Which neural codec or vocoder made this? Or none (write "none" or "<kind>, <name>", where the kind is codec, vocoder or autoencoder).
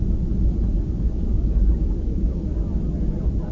none